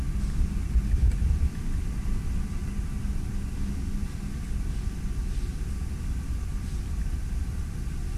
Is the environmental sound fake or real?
real